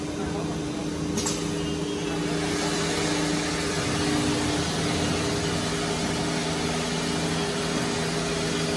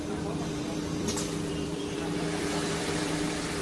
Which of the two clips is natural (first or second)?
first